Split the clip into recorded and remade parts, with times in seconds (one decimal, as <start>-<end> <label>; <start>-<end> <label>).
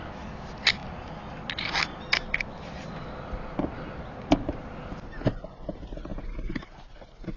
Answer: 0.0-7.4 recorded